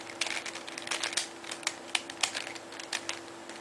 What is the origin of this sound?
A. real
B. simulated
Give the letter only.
A